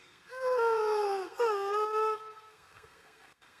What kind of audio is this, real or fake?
fake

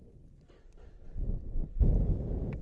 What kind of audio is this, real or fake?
real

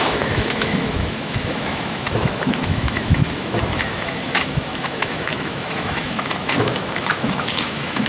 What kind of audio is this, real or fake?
fake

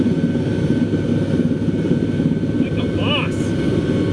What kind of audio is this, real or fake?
real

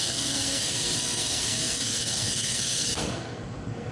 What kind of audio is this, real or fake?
fake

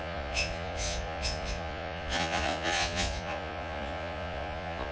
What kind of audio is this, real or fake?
fake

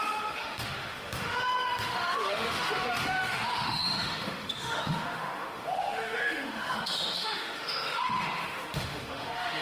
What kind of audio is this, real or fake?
fake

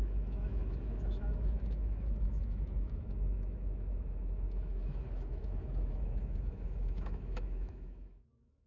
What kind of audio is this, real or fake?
fake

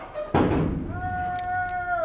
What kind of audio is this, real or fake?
real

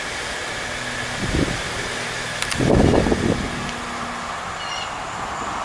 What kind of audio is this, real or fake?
real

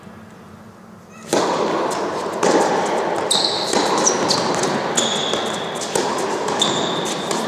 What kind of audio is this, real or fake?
real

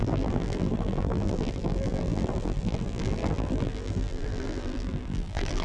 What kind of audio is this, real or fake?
fake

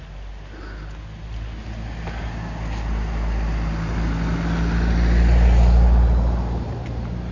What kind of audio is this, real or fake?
real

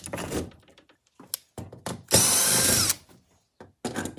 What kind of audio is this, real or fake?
real